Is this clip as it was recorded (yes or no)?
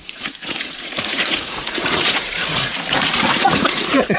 no